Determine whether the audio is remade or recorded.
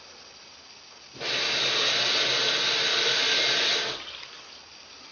recorded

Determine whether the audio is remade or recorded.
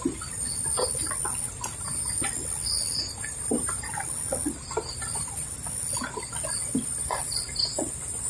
recorded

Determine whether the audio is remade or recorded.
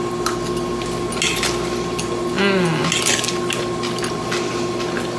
recorded